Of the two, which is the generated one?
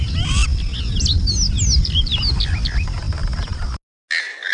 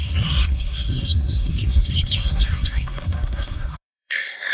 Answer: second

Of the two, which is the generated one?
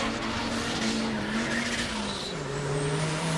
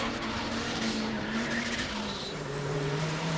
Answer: second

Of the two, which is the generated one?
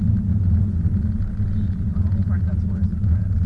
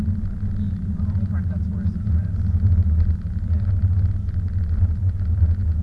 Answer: first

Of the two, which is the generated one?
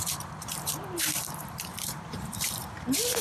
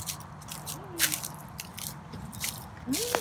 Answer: first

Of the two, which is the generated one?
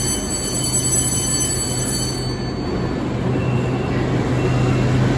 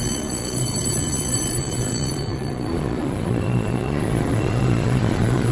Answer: second